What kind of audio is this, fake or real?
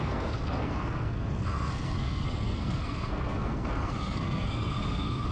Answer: fake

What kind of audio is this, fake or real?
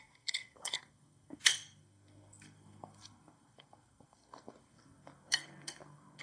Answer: fake